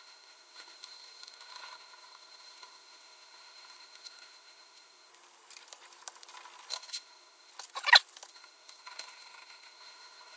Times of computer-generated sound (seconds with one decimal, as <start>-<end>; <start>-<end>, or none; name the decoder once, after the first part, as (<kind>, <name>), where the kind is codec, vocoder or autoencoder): 0.0-5.1 (autoencoder, DAC-VAE); 6.7-7.5; 8.3-10.4